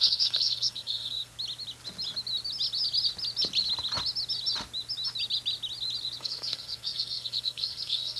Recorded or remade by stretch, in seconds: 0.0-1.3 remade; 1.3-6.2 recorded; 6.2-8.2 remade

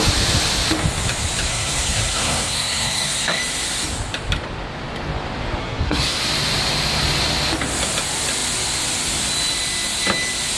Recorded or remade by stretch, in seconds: 0.0-1.5 recorded; 1.5-3.4 remade; 3.4-5.6 recorded; 5.6-6.2 remade; 6.2-10.6 recorded